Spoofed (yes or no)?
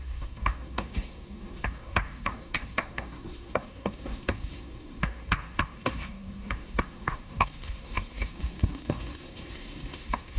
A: yes